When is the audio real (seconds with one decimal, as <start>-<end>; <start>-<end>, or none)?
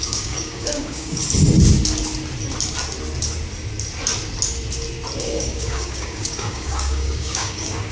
1.2-5.2